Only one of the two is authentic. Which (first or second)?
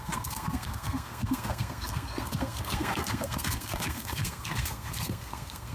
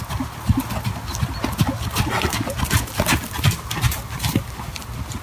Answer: second